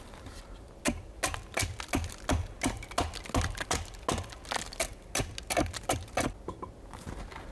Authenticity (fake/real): real